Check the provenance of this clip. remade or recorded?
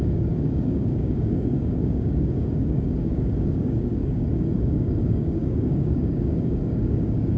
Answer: remade